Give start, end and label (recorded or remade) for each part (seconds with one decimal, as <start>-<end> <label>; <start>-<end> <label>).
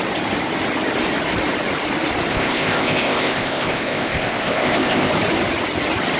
0.0-2.3 recorded; 2.3-5.1 remade; 5.1-6.2 recorded